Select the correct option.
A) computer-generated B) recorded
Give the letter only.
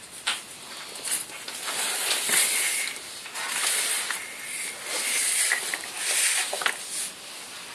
B